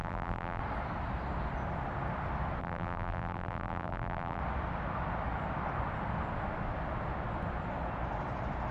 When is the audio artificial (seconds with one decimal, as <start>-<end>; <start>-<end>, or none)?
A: 0.0-0.6; 2.6-4.4